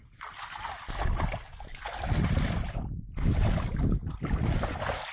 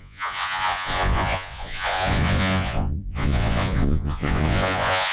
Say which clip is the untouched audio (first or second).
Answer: first